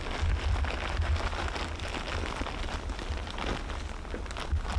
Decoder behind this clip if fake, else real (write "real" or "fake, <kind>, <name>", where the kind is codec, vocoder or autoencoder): real